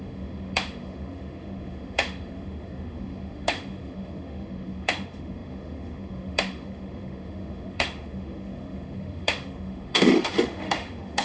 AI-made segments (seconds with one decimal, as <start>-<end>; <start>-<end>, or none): 0.0-11.2